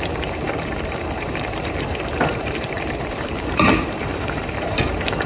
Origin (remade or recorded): remade